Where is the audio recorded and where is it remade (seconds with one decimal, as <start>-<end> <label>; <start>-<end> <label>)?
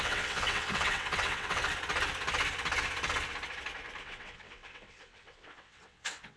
0.0-1.6 remade; 1.6-4.0 recorded; 4.0-6.4 remade